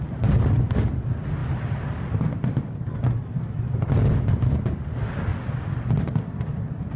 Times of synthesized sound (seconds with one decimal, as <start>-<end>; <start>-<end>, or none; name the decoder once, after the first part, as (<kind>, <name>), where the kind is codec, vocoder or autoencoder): none